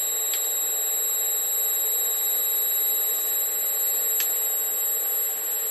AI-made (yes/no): no